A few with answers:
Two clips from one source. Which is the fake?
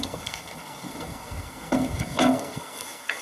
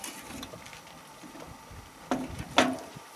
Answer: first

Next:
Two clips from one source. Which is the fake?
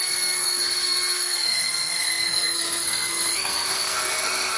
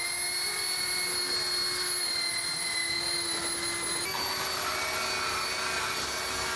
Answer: first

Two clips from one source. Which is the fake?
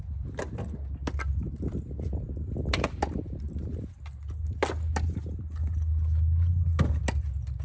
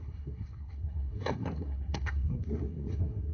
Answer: second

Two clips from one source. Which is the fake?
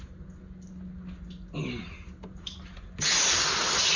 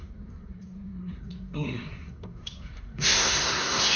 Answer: second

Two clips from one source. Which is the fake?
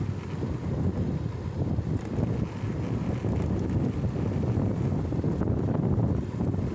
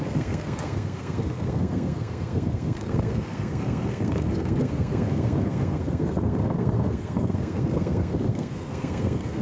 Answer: second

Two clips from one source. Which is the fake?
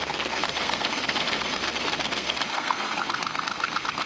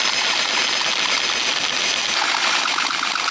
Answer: first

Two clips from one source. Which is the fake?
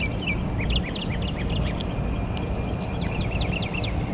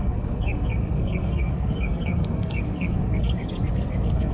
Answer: second